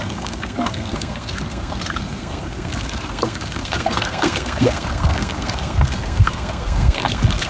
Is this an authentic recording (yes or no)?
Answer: no